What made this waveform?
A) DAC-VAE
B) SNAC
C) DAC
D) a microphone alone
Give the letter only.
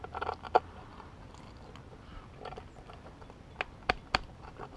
D